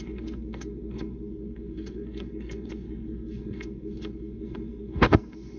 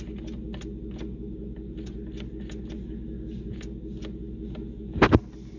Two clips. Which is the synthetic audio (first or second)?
first